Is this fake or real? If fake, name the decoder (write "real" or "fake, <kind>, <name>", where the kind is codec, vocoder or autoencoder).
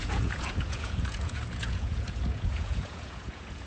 fake, vocoder, Vocos